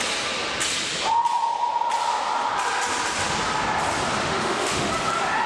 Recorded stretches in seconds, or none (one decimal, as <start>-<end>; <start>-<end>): 0.0-4.2; 4.9-5.5